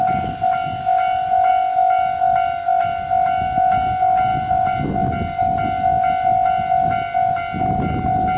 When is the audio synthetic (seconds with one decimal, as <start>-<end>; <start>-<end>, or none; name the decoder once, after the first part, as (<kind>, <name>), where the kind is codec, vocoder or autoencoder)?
none